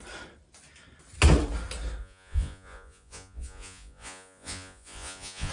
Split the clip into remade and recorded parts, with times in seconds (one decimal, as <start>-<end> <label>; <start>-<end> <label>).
0.0-2.0 recorded; 2.0-5.5 remade